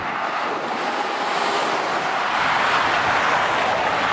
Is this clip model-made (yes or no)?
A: no